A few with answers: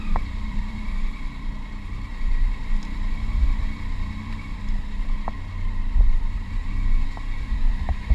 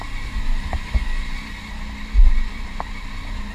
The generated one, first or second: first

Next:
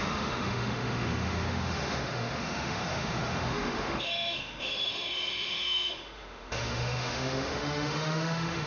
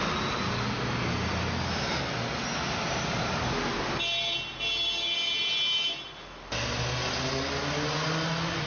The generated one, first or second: first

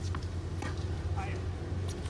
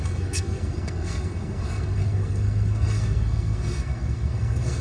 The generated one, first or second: second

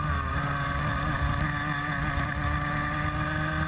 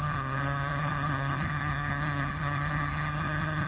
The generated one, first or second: second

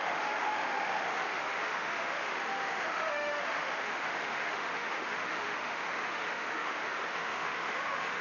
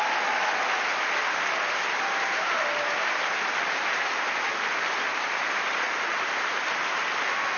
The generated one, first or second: first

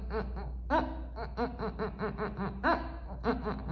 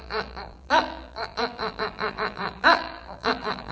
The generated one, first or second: second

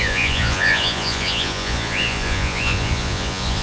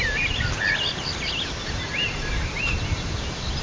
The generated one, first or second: first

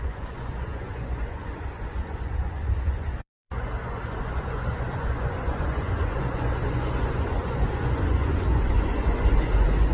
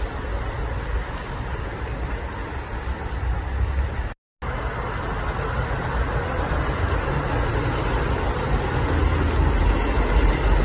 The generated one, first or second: first